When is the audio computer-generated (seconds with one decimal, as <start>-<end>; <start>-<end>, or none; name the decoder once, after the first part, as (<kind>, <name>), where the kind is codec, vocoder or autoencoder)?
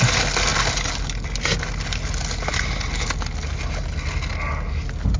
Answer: none